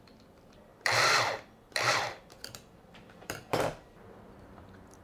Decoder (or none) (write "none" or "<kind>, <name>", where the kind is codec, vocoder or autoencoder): vocoder, BigVGAN v2